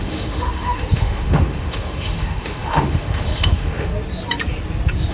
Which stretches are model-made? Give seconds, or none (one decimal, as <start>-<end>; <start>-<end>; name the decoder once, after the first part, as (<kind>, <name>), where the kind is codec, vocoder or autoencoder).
0.0-3.9 (autoencoder, DAC-VAE)